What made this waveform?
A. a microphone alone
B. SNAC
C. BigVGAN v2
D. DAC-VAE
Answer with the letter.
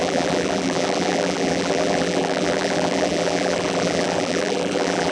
C